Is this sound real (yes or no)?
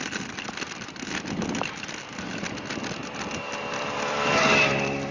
no